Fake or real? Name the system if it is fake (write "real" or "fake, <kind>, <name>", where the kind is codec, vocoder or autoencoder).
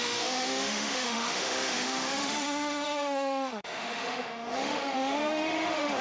fake, autoencoder, DAC-VAE